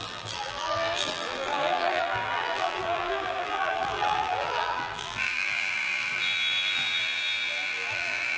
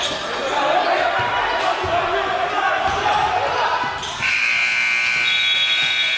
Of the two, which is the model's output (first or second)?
first